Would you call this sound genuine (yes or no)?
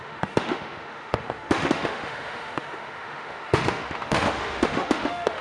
no